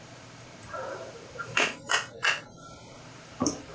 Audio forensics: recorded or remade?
remade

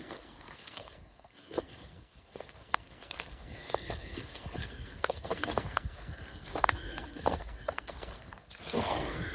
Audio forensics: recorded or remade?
remade